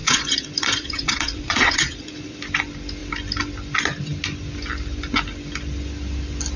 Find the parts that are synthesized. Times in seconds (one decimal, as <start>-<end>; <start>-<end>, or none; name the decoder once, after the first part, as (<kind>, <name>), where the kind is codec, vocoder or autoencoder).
0.0-2.4 (vocoder, Vocos)